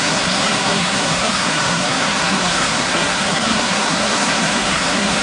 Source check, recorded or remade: remade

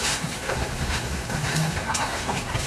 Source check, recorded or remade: remade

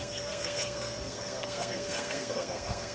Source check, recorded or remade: remade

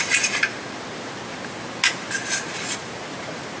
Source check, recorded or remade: recorded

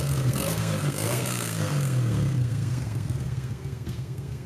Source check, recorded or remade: remade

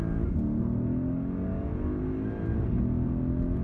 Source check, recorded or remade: recorded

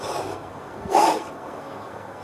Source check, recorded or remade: remade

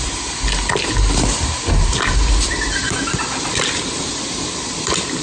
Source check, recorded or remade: recorded